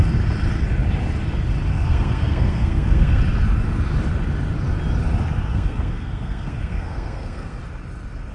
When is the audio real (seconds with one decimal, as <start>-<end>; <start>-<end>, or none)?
0.0-1.7; 3.2-5.5; 7.6-8.3